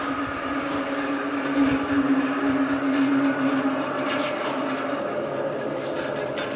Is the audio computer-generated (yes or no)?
no